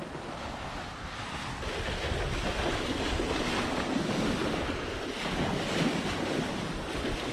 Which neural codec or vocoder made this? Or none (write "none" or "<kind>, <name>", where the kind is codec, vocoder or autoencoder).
none